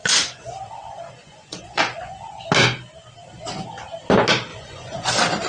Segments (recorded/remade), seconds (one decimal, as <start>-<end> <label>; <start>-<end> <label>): 0.0-2.4 remade; 2.4-4.5 recorded; 4.5-5.1 remade; 5.1-5.5 recorded